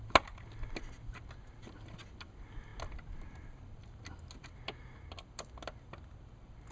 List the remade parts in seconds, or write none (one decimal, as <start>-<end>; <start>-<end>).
none